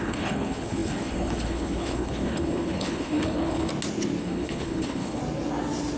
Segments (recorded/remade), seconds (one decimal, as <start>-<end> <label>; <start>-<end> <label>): 0.0-3.7 remade; 3.7-4.2 recorded; 4.2-5.2 remade; 5.2-6.0 recorded